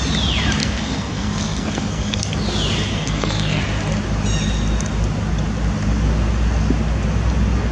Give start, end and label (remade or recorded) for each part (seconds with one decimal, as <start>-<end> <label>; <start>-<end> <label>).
0.0-0.6 recorded; 0.6-2.3 remade; 2.3-2.9 recorded; 2.9-3.6 remade; 3.6-7.7 recorded